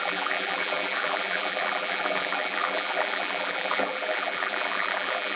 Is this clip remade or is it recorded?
remade